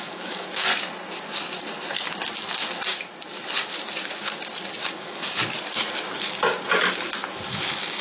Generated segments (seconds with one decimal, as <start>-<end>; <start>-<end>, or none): 0.0-0.7; 4.9-5.4; 7.5-8.0